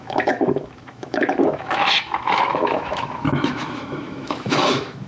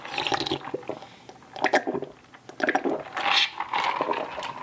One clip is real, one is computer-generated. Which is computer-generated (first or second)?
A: first